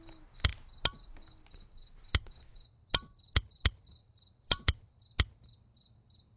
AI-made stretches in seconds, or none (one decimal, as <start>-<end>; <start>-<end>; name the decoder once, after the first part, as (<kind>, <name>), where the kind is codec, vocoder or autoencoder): 4.0-4.9 (vocoder, BigVGAN v2)